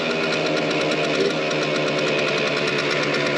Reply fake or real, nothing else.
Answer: real